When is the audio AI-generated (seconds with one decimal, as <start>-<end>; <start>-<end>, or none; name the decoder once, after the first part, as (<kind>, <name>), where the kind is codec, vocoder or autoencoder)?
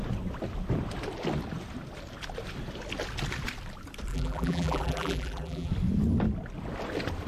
4.1-5.7 (vocoder, BigVGAN v2)